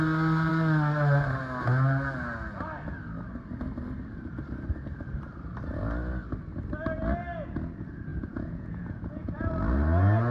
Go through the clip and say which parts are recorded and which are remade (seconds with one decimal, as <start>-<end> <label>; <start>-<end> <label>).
0.0-8.1 recorded; 8.1-9.5 remade; 9.5-10.3 recorded